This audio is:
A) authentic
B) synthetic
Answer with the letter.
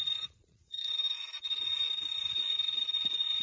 B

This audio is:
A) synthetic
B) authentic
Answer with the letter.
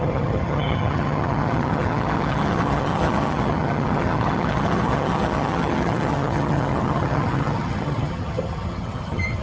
A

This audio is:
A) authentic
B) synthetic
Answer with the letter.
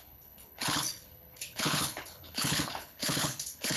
B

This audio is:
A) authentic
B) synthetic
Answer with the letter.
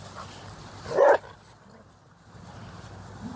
A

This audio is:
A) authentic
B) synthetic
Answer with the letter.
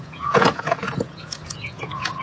B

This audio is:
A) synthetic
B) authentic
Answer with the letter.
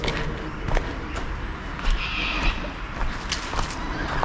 B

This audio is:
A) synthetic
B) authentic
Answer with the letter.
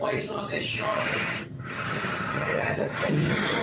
A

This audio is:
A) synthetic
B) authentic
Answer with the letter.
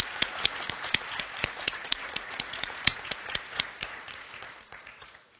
A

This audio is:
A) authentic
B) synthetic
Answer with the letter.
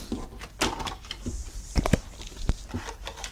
A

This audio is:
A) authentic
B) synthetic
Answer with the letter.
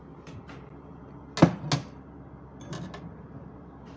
A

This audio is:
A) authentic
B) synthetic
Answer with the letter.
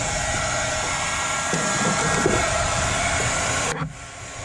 B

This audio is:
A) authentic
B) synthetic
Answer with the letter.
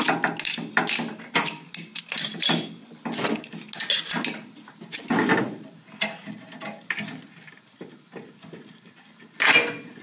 A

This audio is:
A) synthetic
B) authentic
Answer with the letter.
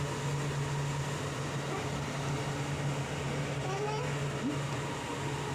B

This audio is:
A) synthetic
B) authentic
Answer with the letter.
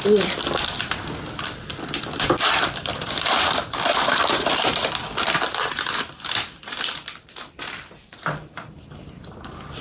A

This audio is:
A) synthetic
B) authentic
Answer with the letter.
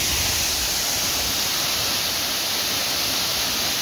B